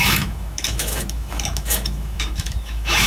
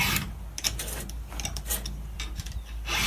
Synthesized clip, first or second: first